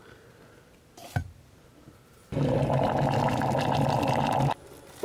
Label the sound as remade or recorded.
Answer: recorded